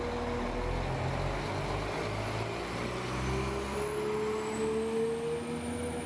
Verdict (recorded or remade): recorded